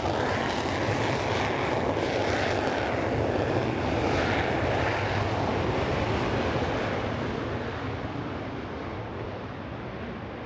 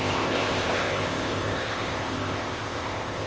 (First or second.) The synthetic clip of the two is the second